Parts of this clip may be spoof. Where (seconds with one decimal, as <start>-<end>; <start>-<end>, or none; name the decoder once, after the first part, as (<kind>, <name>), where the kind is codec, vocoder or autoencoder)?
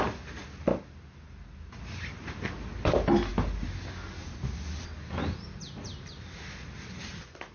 none